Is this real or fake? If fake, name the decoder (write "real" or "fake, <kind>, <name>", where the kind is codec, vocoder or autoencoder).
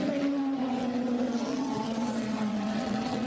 fake, vocoder, WaveNeXt